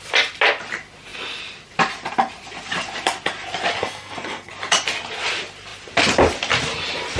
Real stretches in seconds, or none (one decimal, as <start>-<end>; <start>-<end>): 0.0-3.8; 4.5-7.2